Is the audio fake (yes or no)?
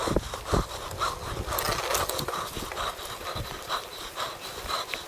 no